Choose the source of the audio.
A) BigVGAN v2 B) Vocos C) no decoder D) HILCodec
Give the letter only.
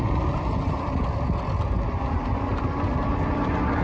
C